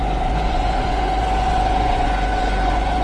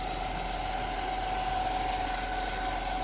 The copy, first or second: first